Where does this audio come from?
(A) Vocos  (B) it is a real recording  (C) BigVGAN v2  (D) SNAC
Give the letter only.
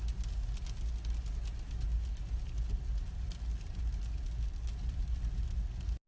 B